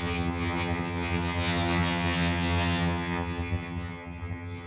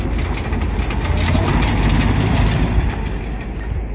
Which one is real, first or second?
second